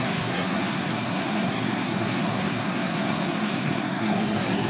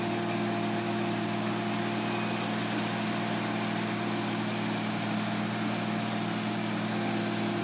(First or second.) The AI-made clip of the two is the first